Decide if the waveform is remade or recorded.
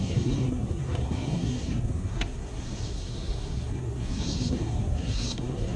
remade